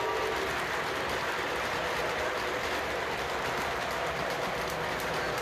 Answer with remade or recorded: recorded